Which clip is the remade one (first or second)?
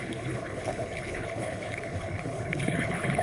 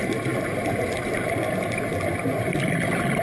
first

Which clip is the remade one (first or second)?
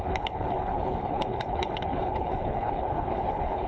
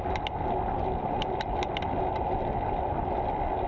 first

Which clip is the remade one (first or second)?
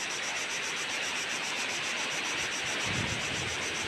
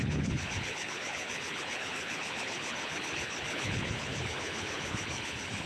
second